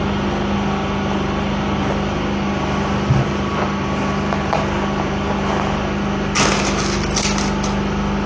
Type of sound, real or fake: real